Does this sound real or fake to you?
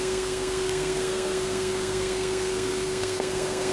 fake